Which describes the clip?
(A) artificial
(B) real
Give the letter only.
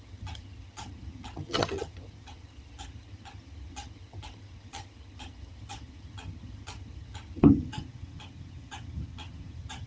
A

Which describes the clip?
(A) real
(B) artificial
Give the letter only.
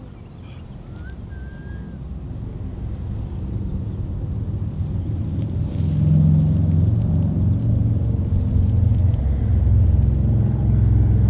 A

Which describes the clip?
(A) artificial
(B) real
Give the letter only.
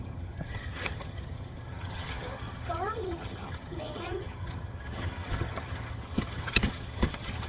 A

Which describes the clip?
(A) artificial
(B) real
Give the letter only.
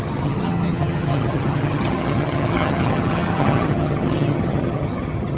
A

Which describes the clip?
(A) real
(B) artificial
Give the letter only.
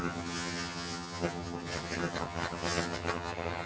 B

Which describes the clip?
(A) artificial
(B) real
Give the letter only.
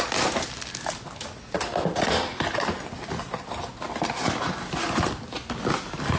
B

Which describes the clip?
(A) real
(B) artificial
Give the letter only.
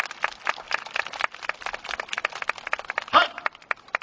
A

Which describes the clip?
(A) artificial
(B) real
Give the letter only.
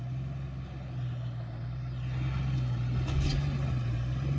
B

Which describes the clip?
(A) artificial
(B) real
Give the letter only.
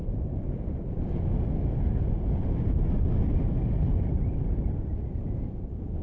B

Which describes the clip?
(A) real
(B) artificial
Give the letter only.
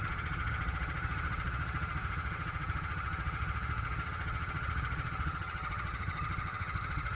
B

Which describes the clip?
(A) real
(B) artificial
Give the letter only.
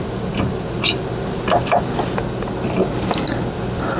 A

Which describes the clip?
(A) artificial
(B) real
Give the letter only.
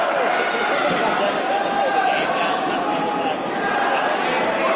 B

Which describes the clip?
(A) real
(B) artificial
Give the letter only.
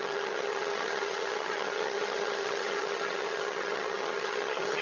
B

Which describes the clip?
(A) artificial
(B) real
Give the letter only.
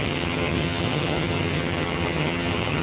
A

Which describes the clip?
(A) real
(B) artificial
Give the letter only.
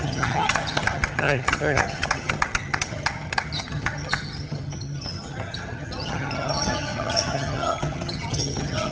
B